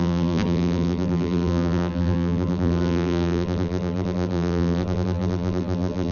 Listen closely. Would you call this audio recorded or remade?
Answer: remade